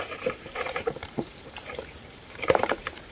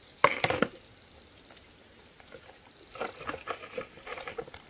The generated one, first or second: first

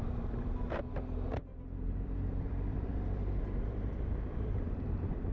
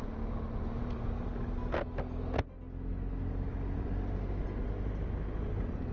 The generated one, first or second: first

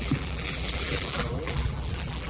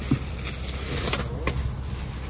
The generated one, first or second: first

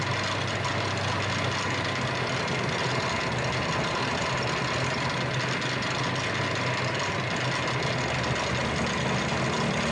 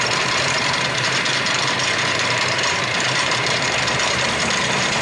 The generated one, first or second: second